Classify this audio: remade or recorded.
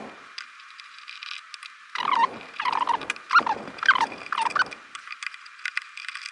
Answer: recorded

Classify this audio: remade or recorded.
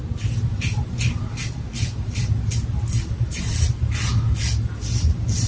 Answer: recorded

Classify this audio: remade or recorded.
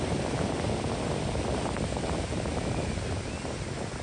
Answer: recorded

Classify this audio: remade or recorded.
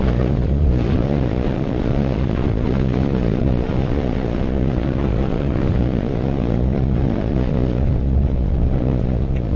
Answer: remade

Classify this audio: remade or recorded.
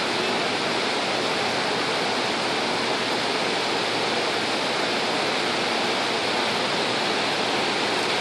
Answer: recorded